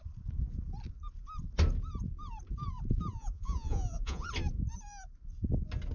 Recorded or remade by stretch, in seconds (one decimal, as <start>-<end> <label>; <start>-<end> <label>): 0.0-3.1 recorded; 3.1-4.3 remade; 4.3-5.9 recorded